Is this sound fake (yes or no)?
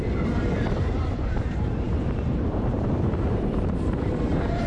yes